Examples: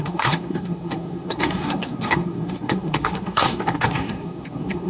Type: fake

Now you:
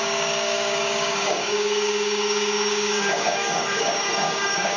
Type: fake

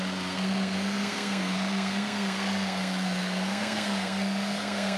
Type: fake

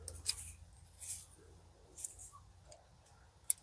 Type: real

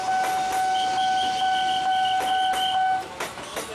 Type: real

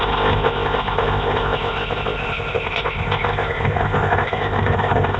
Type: fake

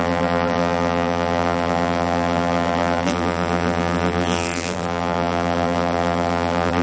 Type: fake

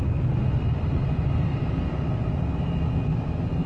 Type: real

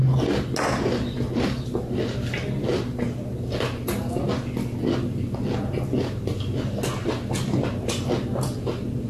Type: real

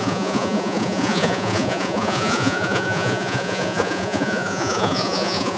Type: fake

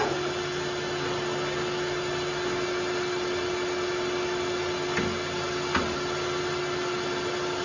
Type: real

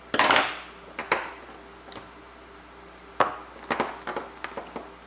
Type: real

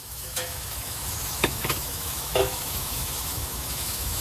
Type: fake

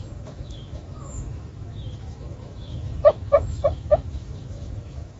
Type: fake